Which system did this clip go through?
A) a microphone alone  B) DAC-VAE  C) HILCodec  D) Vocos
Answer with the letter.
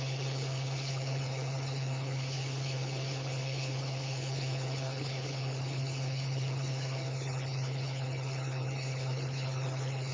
C